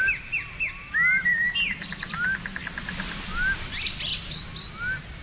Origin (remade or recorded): recorded